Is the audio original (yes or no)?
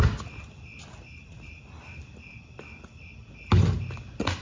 yes